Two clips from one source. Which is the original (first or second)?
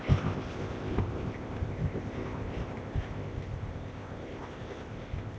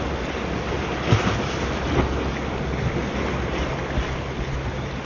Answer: second